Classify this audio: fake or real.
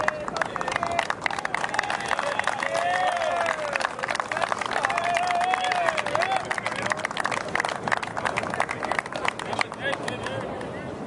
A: real